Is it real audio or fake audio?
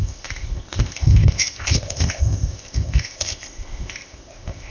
fake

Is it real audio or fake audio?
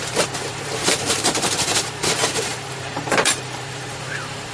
fake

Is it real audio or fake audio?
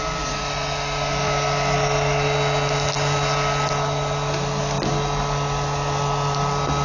real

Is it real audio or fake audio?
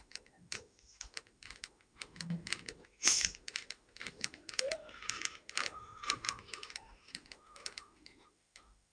fake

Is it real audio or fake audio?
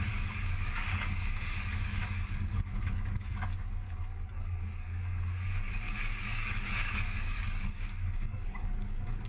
fake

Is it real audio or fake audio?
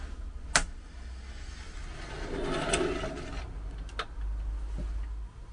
real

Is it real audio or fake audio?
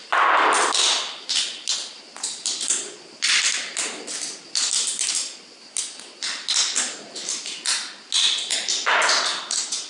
real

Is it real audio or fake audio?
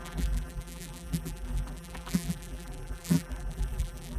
fake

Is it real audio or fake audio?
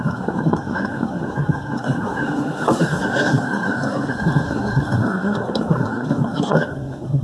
fake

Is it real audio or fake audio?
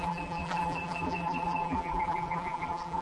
fake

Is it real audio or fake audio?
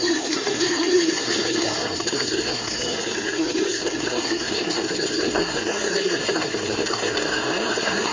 fake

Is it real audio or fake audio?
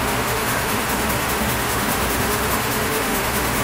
fake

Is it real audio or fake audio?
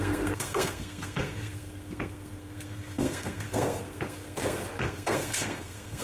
fake